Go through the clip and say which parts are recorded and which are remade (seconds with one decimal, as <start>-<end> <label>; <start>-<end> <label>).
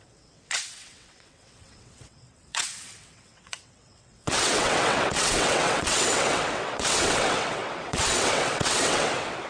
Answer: 0.0-9.5 remade